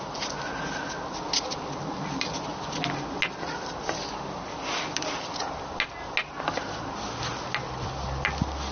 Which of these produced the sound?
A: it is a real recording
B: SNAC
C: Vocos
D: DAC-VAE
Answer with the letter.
A